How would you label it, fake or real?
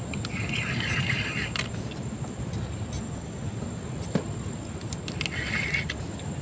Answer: real